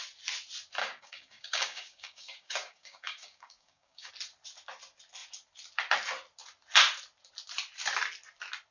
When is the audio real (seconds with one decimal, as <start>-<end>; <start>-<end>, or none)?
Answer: 0.0-0.8; 4.1-8.7